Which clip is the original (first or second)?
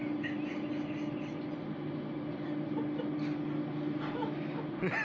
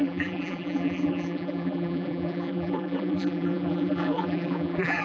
first